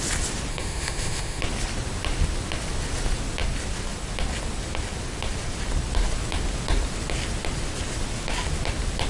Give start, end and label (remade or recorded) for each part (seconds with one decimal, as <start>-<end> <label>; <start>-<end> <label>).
0.0-0.5 recorded; 0.5-1.4 remade; 1.4-9.1 recorded